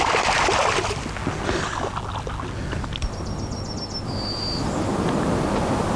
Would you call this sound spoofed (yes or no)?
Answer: no